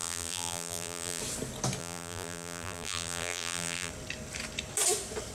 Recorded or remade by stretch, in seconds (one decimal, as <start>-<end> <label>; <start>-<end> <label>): 0.0-1.2 remade; 1.2-1.8 recorded; 1.8-3.9 remade; 3.9-5.3 recorded